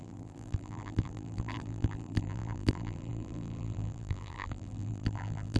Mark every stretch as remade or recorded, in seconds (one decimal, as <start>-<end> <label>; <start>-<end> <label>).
0.0-5.6 remade